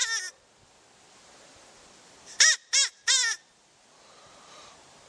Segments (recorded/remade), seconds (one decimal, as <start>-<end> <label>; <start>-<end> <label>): 0.0-1.1 recorded; 1.1-5.1 remade